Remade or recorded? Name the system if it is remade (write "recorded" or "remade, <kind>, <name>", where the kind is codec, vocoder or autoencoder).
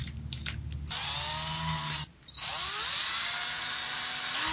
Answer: recorded